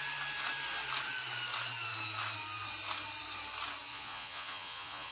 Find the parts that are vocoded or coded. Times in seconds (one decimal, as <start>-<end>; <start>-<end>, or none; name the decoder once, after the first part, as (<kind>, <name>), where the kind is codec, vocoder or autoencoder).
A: 3.9-5.1 (vocoder, Vocos)